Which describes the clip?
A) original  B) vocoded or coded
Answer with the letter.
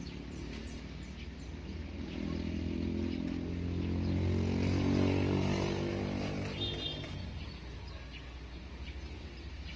A